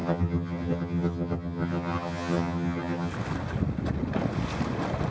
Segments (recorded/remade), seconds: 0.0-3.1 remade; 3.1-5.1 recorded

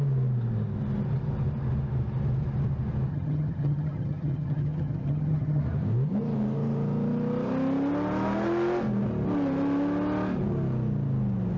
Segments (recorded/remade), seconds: 0.0-3.1 recorded; 3.1-5.6 remade; 5.6-11.6 recorded

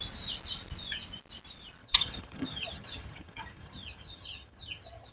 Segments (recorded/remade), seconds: 0.0-1.8 recorded; 1.8-5.1 remade

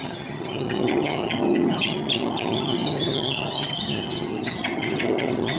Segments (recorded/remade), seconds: 0.0-5.6 remade

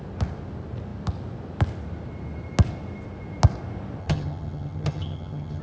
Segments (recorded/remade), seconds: 0.0-4.0 recorded; 4.0-5.6 remade

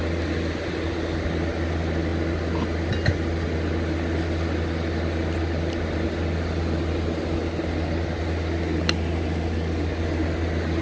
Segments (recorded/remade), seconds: 0.0-10.8 recorded

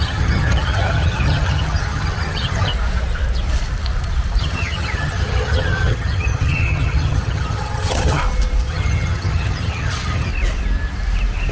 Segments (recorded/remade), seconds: 0.0-2.7 remade; 2.7-4.4 recorded; 4.4-8.2 remade; 8.2-8.7 recorded; 8.7-10.3 remade; 10.3-11.5 recorded

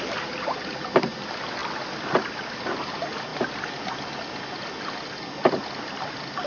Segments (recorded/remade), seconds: 0.0-6.5 recorded